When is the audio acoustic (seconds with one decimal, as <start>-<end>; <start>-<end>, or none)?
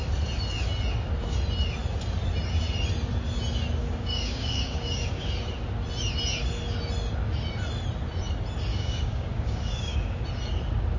0.0-3.8; 5.3-8.7; 10.2-11.0